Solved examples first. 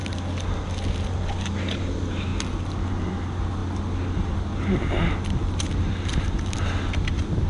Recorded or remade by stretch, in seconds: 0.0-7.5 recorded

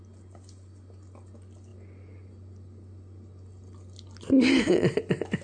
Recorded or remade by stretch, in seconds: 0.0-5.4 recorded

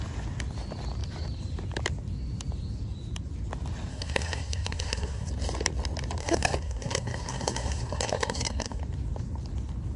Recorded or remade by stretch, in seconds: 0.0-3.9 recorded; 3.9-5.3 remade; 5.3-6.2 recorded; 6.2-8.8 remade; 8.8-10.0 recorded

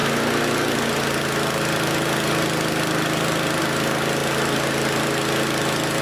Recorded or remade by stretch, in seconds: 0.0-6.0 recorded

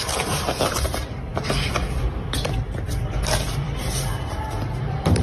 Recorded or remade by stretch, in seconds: 0.0-5.2 remade

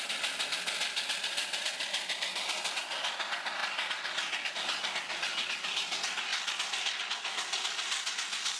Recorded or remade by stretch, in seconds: 0.0-8.6 recorded